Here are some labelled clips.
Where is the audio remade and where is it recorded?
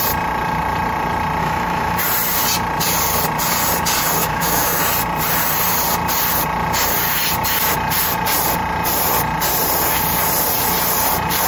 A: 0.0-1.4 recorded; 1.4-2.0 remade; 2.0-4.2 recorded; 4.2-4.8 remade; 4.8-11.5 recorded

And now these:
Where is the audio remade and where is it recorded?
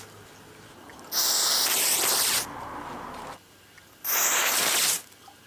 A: 0.0-5.5 recorded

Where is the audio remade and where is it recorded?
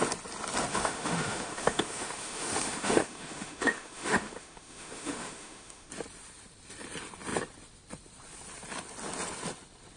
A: 0.0-0.7 recorded; 0.7-5.9 remade; 5.9-10.0 recorded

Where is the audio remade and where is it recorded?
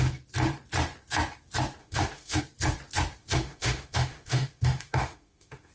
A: 0.0-1.8 recorded; 1.8-2.4 remade; 2.4-3.2 recorded; 3.2-5.7 remade